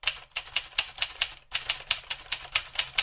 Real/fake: real